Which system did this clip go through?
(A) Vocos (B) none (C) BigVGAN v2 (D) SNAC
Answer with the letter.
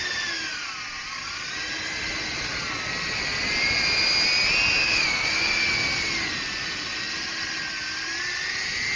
B